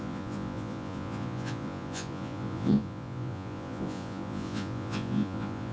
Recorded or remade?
remade